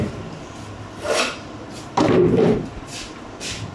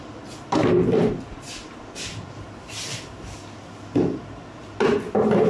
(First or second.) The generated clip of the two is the first